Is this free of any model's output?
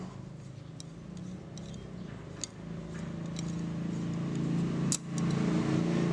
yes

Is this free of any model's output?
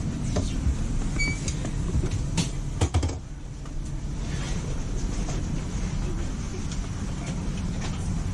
yes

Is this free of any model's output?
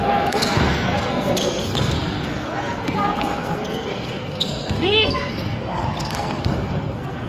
no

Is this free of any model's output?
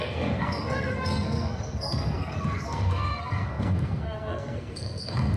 no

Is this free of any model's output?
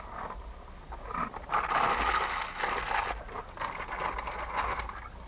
yes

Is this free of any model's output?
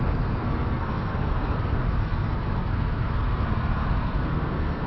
no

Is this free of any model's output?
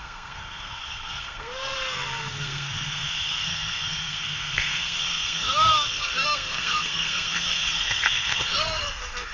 no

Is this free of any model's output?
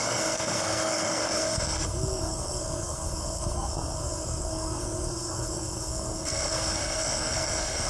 no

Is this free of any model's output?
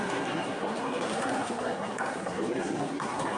no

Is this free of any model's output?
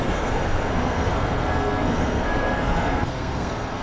no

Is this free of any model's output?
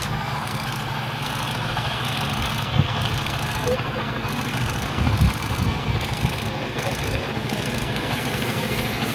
no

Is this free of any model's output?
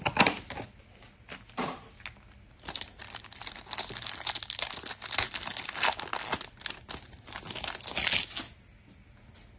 yes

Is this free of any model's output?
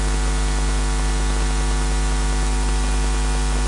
yes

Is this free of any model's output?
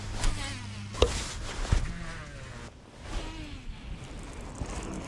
yes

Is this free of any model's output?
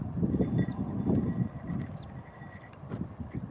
yes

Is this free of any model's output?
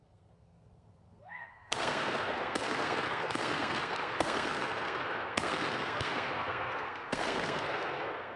no